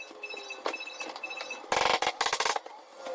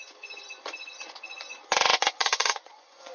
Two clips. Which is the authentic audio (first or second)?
first